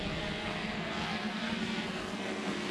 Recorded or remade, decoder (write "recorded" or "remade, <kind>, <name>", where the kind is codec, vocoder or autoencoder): remade, codec, SNAC